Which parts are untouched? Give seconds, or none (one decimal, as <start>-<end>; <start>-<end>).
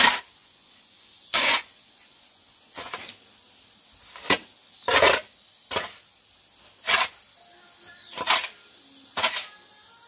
0.0-0.4; 2.9-10.1